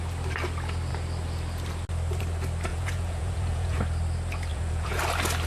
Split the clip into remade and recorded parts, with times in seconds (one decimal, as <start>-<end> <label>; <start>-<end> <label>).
0.0-2.7 recorded; 2.7-3.8 remade; 3.8-4.5 recorded; 4.5-5.0 remade; 5.0-5.5 recorded